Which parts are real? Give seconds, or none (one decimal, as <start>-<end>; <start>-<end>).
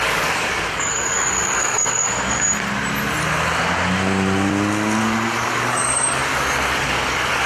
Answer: 2.1-5.0; 6.2-6.8